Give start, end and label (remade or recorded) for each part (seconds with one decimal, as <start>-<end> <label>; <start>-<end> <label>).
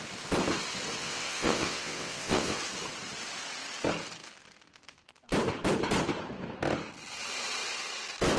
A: 0.0-1.0 recorded; 1.0-2.6 remade; 2.6-8.4 recorded